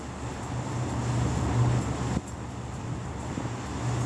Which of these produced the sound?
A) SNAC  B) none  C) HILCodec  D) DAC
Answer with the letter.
B